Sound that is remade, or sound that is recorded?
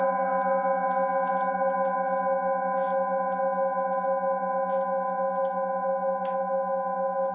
recorded